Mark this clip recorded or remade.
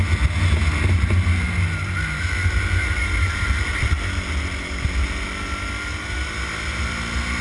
recorded